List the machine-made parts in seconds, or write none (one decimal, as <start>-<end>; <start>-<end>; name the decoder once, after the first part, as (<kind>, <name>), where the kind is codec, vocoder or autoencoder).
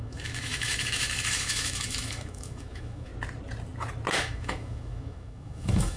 0.0-3.1 (autoencoder, DAC-VAE); 4.2-6.0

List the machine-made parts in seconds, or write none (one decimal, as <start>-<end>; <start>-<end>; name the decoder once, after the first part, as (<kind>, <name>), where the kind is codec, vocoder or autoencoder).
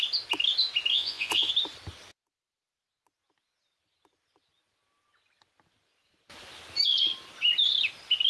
0.9-1.5 (vocoder, Vocos)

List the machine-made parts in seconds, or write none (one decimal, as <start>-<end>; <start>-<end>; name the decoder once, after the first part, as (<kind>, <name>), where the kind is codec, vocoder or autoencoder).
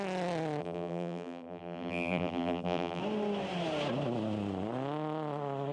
0.6-3.0 (vocoder, BigVGAN v2)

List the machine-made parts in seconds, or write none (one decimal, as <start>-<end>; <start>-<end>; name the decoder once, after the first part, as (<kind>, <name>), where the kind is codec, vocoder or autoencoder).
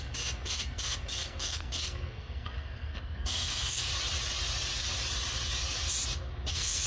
0.0-3.9 (codec, SNAC); 6.5-6.9